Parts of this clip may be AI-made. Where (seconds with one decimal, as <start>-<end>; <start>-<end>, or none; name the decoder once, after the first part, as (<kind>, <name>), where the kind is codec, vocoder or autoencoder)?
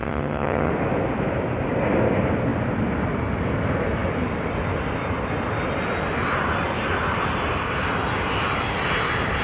0.0-0.7 (vocoder, HiFi-GAN)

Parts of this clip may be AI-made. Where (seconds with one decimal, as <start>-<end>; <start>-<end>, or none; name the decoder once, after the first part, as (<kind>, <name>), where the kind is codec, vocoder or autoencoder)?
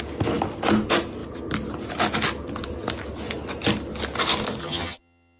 4.6-5.4 (vocoder, HiFi-GAN)